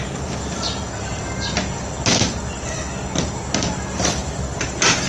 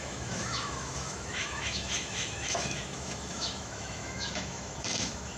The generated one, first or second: second